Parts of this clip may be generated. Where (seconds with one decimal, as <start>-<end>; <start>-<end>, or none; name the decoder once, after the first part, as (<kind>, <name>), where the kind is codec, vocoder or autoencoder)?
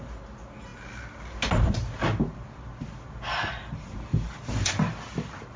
none